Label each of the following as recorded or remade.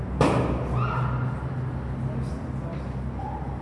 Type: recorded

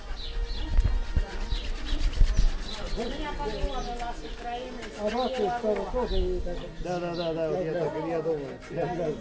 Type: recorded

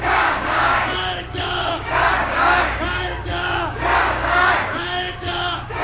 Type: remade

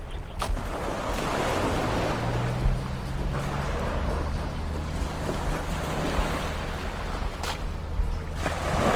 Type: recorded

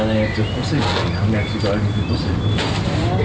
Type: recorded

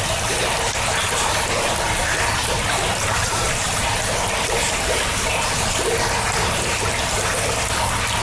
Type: recorded